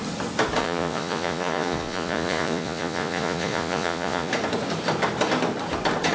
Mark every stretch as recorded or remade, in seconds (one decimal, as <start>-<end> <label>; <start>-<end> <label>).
0.0-0.6 recorded; 0.6-4.3 remade; 4.3-6.1 recorded